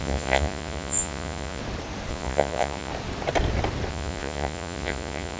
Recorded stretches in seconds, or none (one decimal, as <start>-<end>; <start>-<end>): 1.6-2.1; 2.9-3.9